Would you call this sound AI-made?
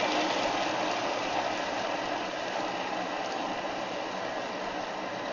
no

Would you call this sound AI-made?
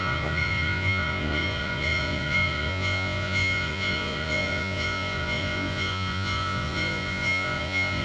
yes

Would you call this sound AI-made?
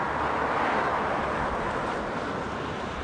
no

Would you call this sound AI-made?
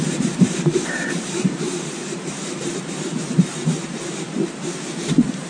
yes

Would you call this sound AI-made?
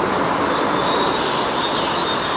no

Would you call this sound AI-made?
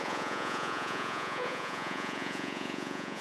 yes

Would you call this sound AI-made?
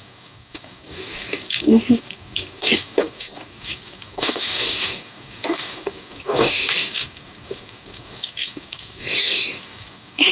yes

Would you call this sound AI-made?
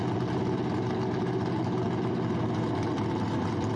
no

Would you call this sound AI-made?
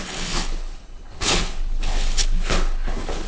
yes